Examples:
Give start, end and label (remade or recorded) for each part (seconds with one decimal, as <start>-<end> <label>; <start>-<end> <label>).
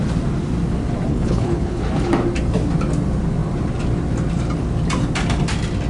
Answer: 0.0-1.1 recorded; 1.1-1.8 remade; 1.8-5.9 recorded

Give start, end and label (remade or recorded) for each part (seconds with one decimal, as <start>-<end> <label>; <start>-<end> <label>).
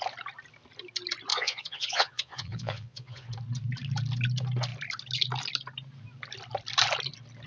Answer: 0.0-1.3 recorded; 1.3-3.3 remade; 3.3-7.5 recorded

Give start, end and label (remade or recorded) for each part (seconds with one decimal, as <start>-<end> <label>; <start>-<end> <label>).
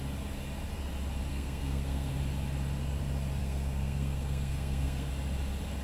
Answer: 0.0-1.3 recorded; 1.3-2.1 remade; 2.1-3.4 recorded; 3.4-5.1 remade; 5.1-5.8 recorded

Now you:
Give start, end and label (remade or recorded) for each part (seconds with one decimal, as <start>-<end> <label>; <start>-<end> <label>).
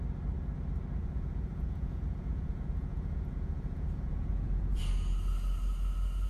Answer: 0.0-1.0 recorded; 1.0-4.8 remade; 4.8-6.3 recorded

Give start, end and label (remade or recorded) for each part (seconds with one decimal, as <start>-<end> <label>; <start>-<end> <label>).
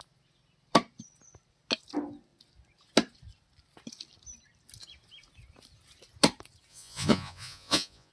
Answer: 0.0-6.7 recorded; 6.7-8.1 remade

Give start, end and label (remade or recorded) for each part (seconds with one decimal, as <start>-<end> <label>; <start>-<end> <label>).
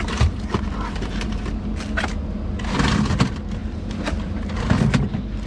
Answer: 0.0-5.5 recorded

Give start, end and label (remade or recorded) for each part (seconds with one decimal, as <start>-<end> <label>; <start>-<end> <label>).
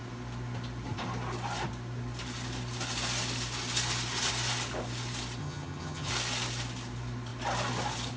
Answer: 0.0-5.4 recorded; 5.4-6.1 remade; 6.1-8.2 recorded